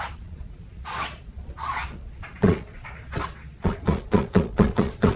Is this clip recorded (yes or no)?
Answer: no